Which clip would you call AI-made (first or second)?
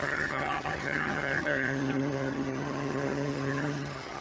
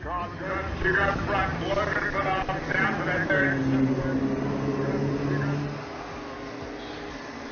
first